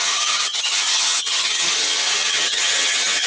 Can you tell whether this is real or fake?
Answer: fake